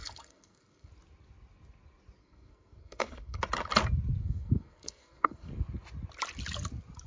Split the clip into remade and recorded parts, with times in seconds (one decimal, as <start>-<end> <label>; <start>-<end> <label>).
0.0-0.9 remade; 0.9-2.2 recorded; 2.2-3.4 remade; 3.4-4.2 recorded; 4.2-5.5 remade; 5.5-7.1 recorded